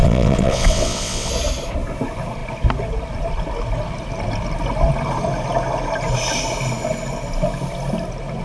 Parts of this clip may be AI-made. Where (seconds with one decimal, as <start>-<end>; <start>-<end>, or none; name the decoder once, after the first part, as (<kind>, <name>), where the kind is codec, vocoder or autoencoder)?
0.0-1.3 (vocoder, WaveNeXt)